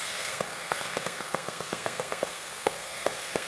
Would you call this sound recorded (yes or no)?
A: no